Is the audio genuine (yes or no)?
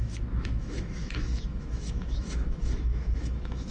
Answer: no